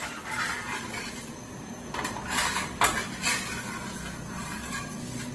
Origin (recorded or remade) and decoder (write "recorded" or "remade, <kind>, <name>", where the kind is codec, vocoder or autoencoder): recorded